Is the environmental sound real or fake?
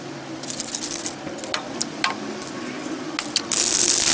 real